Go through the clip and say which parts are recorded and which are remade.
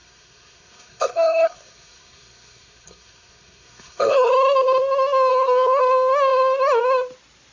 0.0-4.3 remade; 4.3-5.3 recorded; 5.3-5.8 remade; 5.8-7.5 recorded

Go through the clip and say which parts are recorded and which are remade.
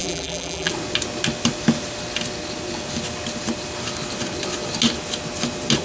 0.0-0.7 remade; 0.7-5.8 recorded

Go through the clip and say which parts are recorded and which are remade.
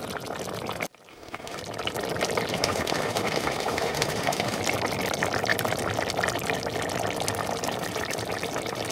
0.0-1.1 recorded; 1.1-1.6 remade; 1.6-2.5 recorded; 2.5-4.6 remade; 4.6-8.9 recorded